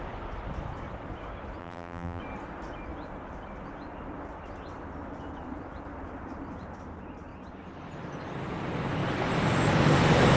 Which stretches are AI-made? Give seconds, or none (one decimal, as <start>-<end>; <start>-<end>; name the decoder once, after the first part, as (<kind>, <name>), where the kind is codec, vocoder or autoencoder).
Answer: 1.6-2.2 (vocoder, BigVGAN v2)